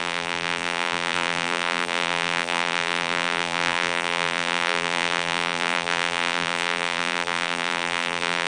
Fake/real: fake